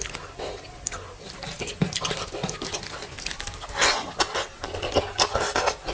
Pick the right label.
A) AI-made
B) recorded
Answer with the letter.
B